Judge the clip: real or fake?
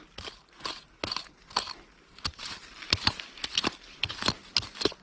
real